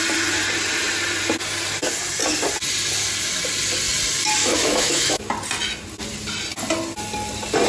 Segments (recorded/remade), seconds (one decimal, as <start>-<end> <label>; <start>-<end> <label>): 0.0-4.4 recorded; 4.4-5.3 remade; 5.3-7.7 recorded